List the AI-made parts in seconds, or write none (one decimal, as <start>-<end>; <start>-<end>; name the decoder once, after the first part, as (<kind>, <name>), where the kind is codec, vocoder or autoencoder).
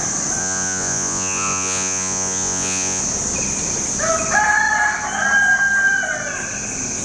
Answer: 0.4-3.0 (vocoder, Vocos)